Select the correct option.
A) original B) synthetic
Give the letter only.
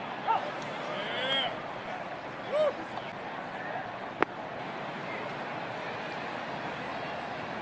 A